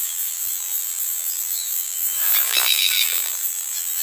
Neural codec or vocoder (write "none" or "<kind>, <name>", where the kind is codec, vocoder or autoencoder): vocoder, BigVGAN v2